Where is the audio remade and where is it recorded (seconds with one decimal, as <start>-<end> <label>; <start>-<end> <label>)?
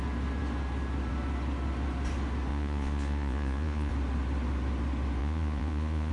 0.0-2.5 recorded; 2.5-3.9 remade; 3.9-5.2 recorded; 5.2-6.1 remade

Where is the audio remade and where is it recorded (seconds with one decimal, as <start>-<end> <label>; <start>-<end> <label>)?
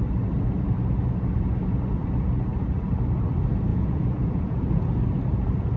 0.0-3.7 recorded; 3.7-4.6 remade; 4.6-5.8 recorded